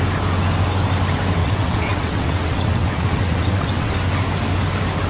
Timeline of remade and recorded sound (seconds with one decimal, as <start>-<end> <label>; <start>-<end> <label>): 0.0-1.4 recorded; 1.4-3.9 remade; 3.9-5.1 recorded